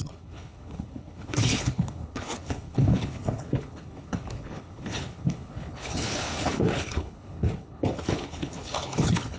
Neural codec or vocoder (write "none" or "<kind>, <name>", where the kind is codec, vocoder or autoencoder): codec, HILCodec